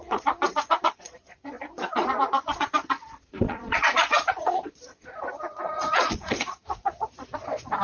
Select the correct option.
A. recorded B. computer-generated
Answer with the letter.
B